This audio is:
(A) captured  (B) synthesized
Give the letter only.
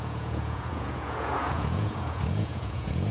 B